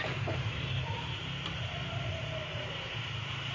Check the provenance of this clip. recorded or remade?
remade